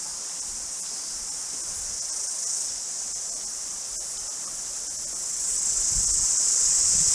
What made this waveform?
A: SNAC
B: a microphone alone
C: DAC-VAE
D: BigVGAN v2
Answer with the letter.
B